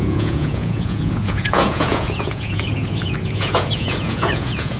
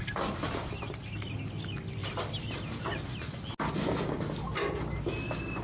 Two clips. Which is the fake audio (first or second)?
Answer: first